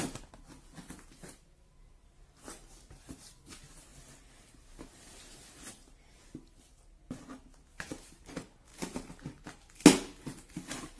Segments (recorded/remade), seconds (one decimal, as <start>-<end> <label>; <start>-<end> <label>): 0.0-11.0 recorded